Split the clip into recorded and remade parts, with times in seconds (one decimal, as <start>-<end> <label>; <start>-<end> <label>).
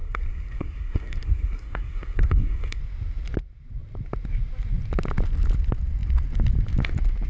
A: 0.0-2.8 remade; 2.8-7.3 recorded